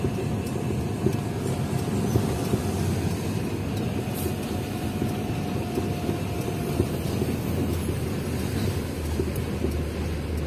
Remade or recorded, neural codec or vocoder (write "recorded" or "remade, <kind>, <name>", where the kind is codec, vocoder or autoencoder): recorded